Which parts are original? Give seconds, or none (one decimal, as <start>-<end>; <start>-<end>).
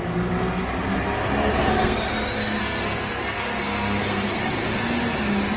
0.0-1.6; 2.1-2.6; 4.4-5.6